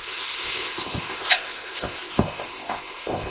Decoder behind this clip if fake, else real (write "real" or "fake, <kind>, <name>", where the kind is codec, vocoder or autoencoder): fake, codec, ZipCodec